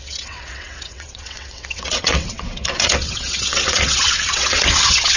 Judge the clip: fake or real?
fake